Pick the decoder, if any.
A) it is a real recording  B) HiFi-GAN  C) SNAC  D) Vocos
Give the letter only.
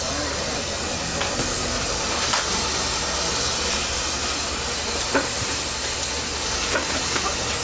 A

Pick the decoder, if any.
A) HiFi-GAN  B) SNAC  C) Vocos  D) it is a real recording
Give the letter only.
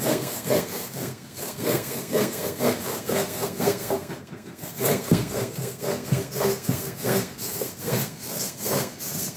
B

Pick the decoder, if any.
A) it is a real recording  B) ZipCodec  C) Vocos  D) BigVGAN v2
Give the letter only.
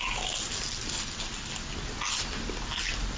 A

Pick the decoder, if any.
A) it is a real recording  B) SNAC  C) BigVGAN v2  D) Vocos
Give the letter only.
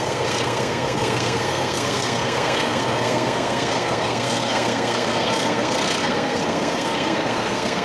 B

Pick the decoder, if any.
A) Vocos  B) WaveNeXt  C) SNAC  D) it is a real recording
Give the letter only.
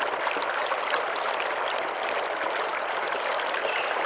D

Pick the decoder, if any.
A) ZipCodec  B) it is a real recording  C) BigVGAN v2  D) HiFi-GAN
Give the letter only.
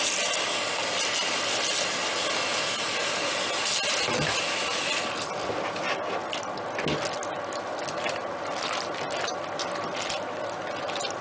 B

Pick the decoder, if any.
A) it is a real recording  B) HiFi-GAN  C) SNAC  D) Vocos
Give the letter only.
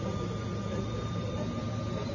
A